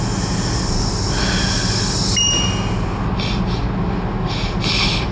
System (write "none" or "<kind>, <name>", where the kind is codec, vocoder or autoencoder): none